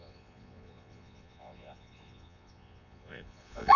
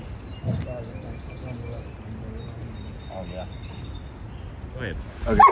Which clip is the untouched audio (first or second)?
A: second